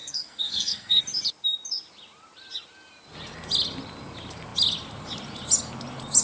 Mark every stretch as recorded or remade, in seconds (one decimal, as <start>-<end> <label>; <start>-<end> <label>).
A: 0.0-1.0 remade; 1.0-6.2 recorded